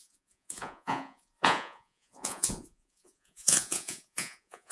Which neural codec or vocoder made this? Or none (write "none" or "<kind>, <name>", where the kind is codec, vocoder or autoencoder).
vocoder, Vocos